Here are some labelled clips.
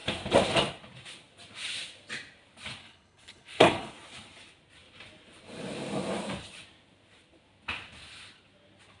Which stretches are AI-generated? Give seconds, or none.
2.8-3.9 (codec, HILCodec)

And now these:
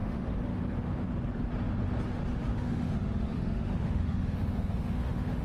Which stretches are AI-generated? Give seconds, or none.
0.0-0.6 (autoencoder, DAC-VAE); 2.5-5.4

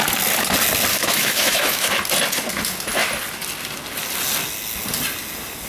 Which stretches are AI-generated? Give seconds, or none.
0.9-1.9 (autoencoder, DAC-VAE)

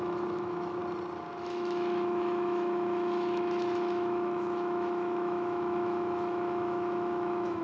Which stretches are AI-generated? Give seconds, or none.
0.0-0.8 (autoencoder, DAC-VAE); 1.4-7.6

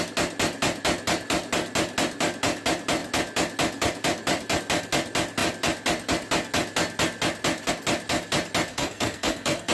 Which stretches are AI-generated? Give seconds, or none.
8.7-9.7 (codec, SNAC)

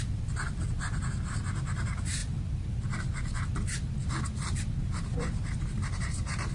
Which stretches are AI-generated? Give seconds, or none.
0.0-2.2 (vocoder, BigVGAN v2); 4.8-6.5

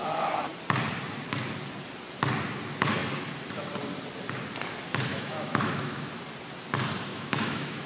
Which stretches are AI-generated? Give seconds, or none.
5.1-6.1 (autoencoder, DAC-VAE); 7.1-7.9